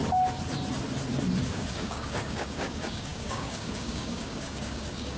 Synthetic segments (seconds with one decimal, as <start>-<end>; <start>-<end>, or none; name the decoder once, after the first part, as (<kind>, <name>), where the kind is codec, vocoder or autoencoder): 1.5-5.2 (codec, DAC)